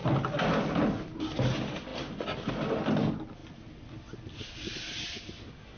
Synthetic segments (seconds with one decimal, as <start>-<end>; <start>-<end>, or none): none